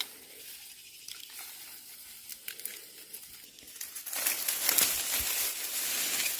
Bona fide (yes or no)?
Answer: yes